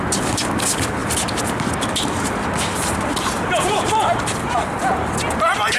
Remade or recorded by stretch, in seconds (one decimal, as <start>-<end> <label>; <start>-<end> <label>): 0.0-1.0 recorded; 1.0-4.5 remade; 4.5-5.8 recorded